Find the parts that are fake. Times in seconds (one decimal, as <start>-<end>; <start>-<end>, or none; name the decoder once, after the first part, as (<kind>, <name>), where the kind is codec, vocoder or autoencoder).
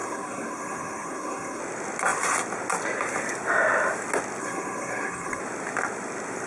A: 0.0-1.6 (codec, SNAC); 4.4-5.4